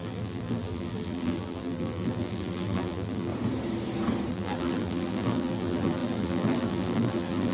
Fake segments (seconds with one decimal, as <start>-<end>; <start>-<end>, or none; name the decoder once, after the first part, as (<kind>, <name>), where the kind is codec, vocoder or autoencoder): 0.0-3.3 (vocoder, BigVGAN v2); 4.3-7.5